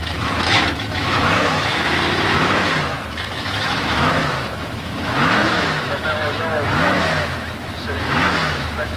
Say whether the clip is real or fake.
fake